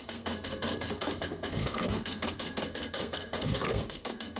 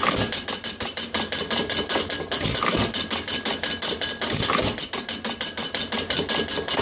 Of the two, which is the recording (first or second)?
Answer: second